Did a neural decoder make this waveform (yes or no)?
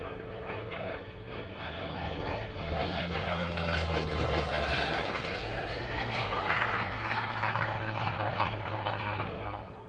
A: yes